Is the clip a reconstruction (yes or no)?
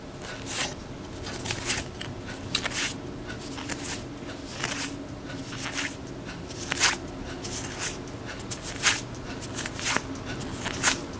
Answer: no